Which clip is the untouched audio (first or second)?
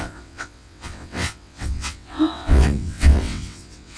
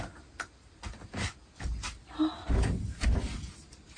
second